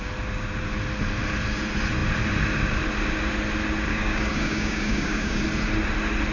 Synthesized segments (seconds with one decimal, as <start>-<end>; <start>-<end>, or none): 3.9-5.4